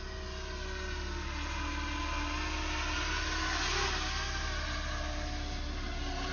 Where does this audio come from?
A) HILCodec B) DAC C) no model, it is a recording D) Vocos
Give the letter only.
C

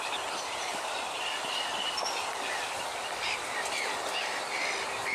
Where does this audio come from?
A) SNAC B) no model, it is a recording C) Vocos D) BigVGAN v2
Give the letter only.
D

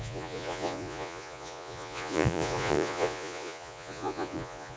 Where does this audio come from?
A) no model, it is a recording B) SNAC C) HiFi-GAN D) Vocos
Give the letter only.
D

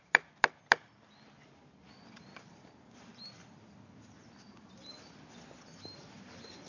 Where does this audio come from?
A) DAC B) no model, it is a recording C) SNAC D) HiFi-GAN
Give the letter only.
B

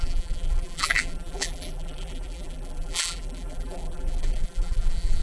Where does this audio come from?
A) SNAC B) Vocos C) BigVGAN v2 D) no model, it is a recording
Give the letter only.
C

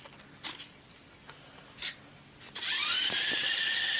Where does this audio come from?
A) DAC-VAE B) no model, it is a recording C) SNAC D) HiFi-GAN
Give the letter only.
B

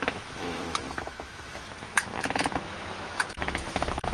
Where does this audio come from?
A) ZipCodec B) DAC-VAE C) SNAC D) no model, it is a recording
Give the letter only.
B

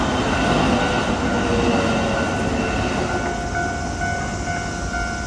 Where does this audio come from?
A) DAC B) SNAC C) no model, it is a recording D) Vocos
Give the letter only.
C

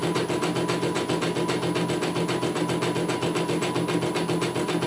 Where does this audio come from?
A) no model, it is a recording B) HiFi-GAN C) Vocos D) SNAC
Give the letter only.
A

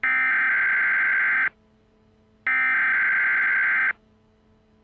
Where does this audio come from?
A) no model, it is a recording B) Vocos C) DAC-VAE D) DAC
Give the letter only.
A